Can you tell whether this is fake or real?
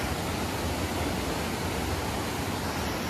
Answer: real